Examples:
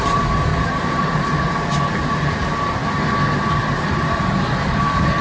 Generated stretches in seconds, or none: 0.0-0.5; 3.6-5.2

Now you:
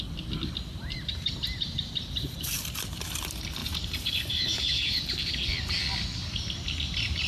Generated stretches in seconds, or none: 0.7-2.5; 3.6-5.2; 6.2-7.3

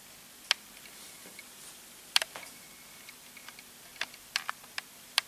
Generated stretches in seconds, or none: none

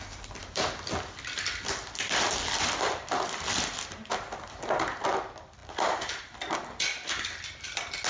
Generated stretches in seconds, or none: 0.4-4.7

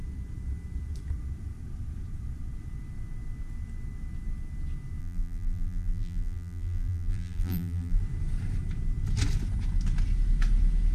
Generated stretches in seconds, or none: 5.0-8.0

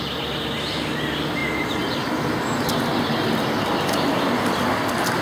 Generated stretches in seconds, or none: none

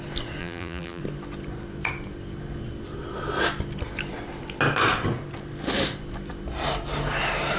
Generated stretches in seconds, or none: 0.4-1.0

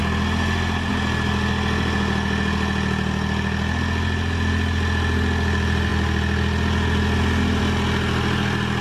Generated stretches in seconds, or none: none